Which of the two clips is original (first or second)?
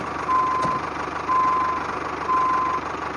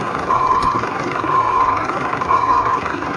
first